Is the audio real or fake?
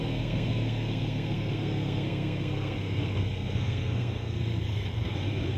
fake